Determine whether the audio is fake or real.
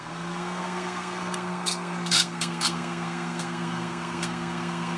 fake